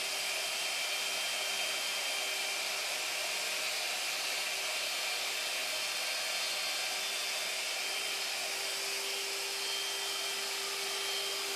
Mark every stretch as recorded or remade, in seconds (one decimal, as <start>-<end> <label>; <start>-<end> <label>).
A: 0.0-11.6 recorded